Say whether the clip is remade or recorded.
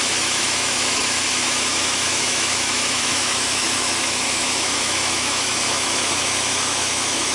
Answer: remade